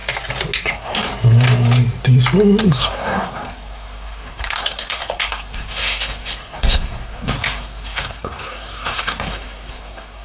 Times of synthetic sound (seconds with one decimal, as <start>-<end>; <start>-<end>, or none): 0.7-1.1; 2.6-10.2